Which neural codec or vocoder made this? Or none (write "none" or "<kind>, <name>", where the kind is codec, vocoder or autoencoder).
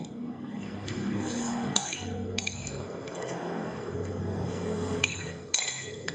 codec, SNAC